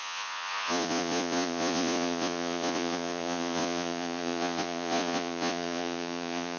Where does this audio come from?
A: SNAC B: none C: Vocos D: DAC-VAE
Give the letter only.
C